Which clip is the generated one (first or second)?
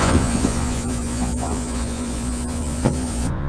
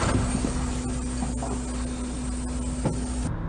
first